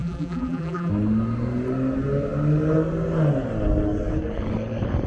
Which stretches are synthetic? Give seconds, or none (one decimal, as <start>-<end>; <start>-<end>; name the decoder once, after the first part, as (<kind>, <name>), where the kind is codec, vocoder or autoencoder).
0.0-0.9 (vocoder, BigVGAN v2)